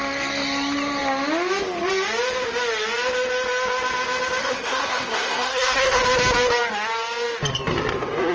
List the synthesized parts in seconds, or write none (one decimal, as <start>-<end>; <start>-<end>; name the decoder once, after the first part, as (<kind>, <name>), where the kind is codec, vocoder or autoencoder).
4.4-6.0 (codec, SNAC)